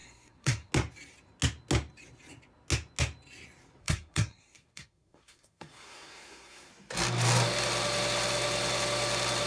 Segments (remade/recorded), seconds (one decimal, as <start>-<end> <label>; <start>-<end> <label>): 0.0-0.7 remade; 0.7-3.8 recorded; 3.8-6.7 remade; 6.7-9.5 recorded